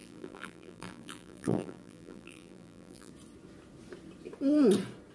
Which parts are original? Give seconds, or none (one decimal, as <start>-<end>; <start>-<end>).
3.1-5.1